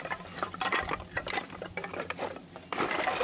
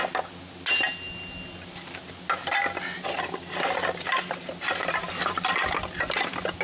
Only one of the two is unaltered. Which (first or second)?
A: second